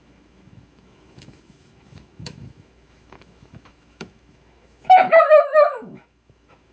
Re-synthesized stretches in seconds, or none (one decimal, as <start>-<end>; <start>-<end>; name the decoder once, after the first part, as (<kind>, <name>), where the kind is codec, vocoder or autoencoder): 0.0-6.7 (autoencoder, DAC-VAE)